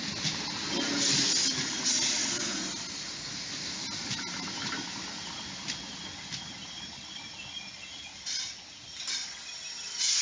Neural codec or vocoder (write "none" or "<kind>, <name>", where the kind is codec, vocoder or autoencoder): none